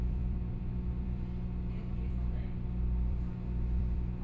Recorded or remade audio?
remade